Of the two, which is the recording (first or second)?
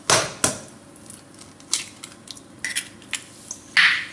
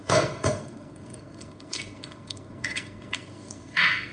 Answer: first